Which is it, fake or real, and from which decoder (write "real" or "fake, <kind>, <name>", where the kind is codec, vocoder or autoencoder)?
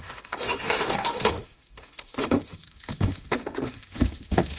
fake, autoencoder, DAC-VAE